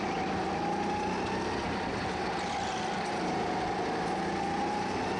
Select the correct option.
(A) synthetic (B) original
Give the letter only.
B